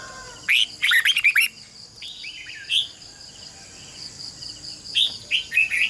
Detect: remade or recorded recorded